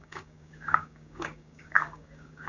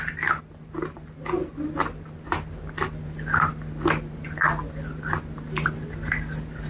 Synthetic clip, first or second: first